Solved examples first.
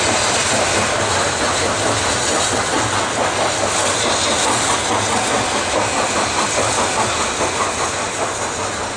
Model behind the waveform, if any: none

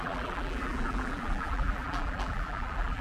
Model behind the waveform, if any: vocoder, BigVGAN v2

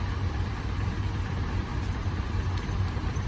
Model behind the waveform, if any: vocoder, BigVGAN v2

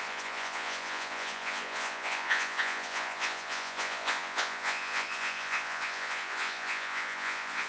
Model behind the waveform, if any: vocoder, Vocos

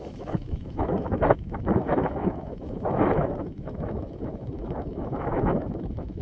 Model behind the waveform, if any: autoencoder, DAC-VAE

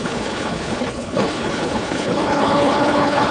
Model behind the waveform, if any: codec, HILCodec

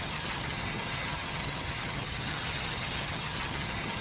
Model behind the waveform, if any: vocoder, HiFi-GAN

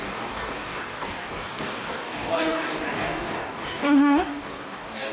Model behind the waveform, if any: codec, DAC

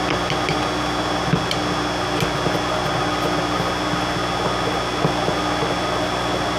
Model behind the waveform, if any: none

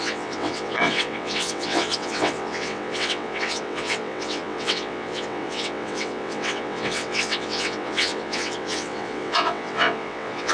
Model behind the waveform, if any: vocoder, WaveNeXt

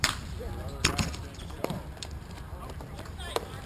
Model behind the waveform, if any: vocoder, BigVGAN v2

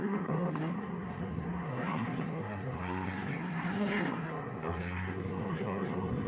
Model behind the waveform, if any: codec, SNAC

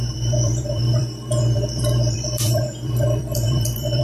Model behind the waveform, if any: vocoder, BigVGAN v2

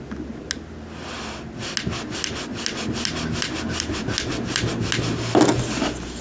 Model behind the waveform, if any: none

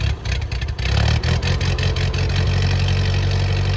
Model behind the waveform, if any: none